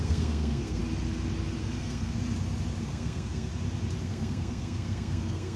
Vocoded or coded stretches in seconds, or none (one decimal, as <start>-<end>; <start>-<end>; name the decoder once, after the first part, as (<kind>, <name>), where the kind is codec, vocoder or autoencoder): 0.0-0.8 (codec, SNAC); 1.6-2.2; 2.8-3.5; 4.0-5.6